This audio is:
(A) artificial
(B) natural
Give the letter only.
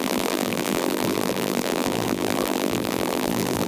A